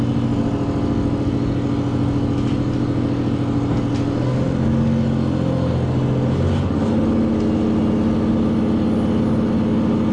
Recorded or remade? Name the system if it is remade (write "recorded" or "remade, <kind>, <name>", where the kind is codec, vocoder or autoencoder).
recorded